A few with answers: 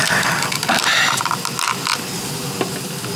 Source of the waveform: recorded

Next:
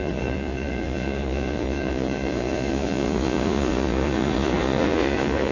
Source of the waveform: remade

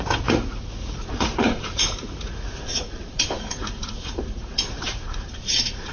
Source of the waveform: remade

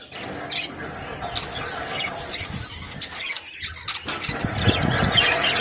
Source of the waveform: recorded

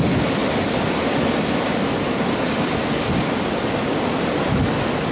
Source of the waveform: recorded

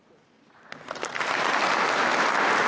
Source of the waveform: recorded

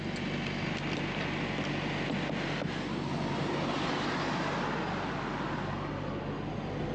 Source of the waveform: recorded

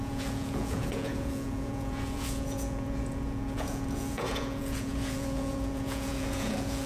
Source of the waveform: remade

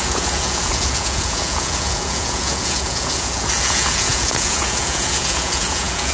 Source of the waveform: remade